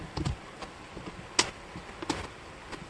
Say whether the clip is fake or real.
real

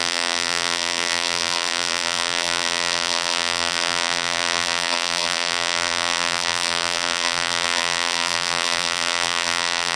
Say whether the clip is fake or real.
fake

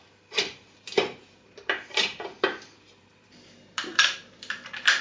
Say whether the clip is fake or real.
fake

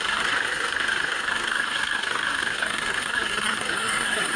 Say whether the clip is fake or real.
fake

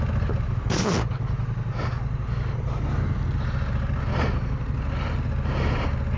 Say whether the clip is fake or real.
real